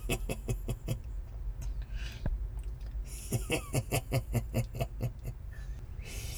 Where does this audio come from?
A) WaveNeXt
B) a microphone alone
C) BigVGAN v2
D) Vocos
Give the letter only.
B